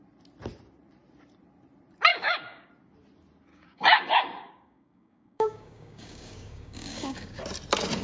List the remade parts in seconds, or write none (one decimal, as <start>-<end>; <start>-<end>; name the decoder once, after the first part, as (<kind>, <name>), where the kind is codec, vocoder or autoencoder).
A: 2.1-2.7 (codec, DAC); 3.5-7.4